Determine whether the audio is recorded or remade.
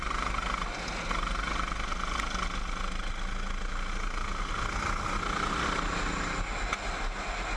recorded